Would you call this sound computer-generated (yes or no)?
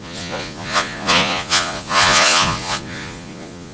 yes